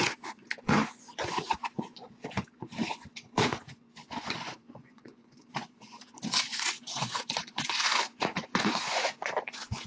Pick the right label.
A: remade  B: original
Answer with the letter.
A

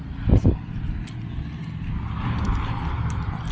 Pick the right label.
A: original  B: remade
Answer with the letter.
A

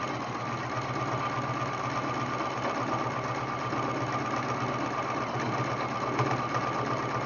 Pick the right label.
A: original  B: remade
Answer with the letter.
A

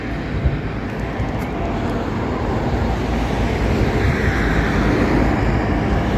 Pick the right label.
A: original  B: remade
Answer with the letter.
A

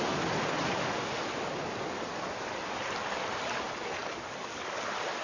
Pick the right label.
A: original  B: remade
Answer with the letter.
A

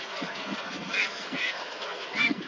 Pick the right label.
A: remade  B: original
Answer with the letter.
A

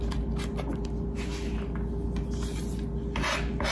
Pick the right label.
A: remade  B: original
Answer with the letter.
B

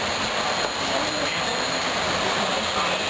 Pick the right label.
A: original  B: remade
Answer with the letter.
A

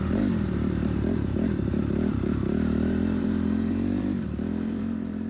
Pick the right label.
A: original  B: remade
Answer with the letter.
B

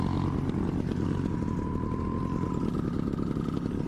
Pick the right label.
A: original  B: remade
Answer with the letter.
A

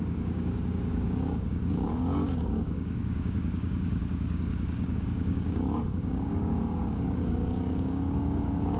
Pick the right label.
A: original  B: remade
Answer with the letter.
B